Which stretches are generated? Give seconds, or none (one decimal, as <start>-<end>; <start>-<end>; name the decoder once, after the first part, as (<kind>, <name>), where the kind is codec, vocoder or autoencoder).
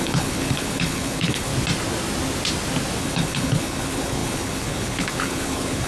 0.0-1.5 (codec, HILCodec); 3.0-5.9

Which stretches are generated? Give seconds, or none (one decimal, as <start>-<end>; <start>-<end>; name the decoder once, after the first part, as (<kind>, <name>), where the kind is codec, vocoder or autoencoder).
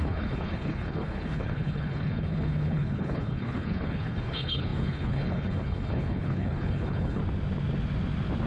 0.0-7.2 (codec, HILCodec)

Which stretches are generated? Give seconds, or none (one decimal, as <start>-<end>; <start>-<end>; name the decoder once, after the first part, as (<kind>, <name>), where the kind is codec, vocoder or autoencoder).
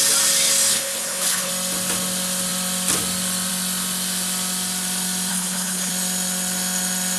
0.7-1.5 (codec, HILCodec); 5.3-5.9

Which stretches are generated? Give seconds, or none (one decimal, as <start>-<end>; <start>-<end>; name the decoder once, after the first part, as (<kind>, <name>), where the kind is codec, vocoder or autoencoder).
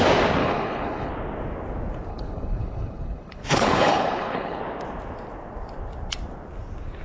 0.4-1.1 (codec, HILCodec); 2.1-4.6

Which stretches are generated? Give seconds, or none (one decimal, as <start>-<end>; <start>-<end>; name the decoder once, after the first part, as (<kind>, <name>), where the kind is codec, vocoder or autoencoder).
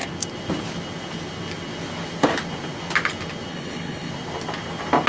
3.5-4.1 (codec, HILCodec)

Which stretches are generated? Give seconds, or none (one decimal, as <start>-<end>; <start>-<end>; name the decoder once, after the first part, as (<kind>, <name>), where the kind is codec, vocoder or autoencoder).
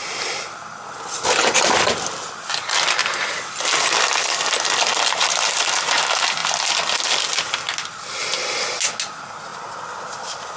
none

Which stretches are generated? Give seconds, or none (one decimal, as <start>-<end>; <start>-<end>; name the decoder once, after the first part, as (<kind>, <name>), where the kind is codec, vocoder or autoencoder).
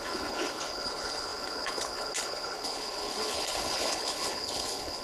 0.0-5.0 (codec, HILCodec)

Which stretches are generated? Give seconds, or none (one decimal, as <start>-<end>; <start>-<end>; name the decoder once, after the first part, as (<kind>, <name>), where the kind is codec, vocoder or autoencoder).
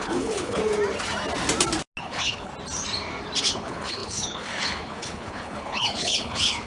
0.0-0.6 (codec, HILCodec); 2.0-2.5; 3.4-6.7